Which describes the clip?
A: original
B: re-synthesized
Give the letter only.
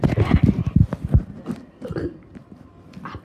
A